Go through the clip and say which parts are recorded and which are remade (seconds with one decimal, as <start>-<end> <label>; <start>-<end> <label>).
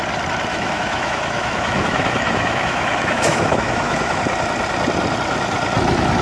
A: 0.0-0.5 recorded; 0.5-4.2 remade; 4.2-6.2 recorded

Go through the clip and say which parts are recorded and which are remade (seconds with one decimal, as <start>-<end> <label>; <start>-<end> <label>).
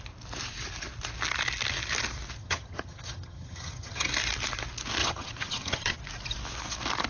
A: 0.0-2.4 recorded; 2.4-4.1 remade; 4.1-5.0 recorded; 5.0-6.0 remade; 6.0-7.1 recorded